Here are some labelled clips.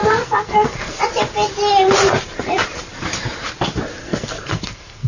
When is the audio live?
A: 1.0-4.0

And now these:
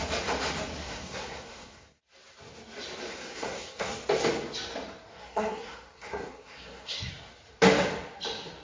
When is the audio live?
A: 0.0-0.8; 2.0-3.1; 3.9-5.1; 7.1-8.6